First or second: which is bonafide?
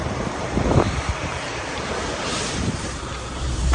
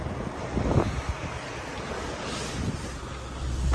second